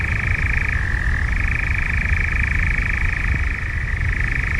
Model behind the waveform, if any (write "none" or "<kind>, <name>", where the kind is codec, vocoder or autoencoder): none